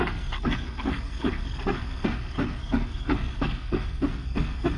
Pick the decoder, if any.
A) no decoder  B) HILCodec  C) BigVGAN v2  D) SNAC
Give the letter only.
D